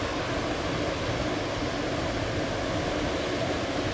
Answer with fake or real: real